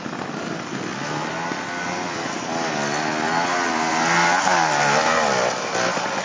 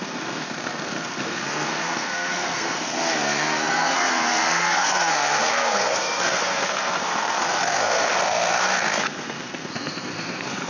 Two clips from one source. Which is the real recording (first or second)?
first